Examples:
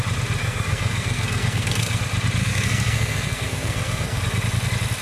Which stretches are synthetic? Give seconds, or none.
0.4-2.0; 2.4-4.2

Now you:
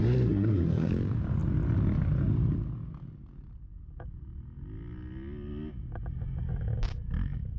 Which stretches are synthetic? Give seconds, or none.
0.0-0.9

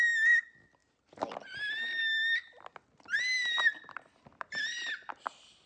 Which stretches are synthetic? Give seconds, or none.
none

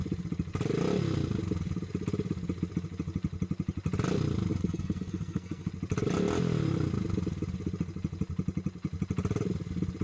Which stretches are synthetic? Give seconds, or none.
4.5-5.7

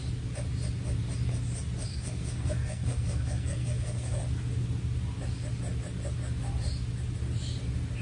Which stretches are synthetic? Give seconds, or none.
1.9-4.2

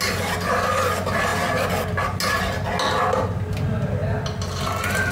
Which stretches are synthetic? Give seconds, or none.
none

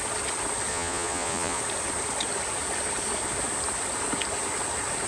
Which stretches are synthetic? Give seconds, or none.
0.7-1.6

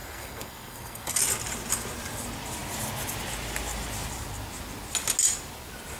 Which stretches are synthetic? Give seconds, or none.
0.0-1.2